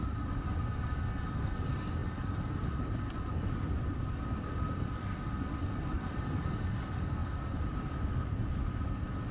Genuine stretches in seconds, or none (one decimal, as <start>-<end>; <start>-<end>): 0.0-2.0; 6.5-7.2; 8.0-9.3